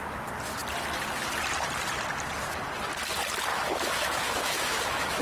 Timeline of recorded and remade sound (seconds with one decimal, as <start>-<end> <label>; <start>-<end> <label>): 0.0-3.5 recorded; 3.5-5.2 remade